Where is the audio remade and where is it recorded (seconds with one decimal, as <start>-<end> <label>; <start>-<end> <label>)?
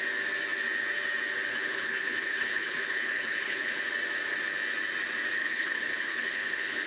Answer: 0.0-1.5 recorded; 1.5-3.8 remade; 3.8-5.4 recorded; 5.4-6.9 remade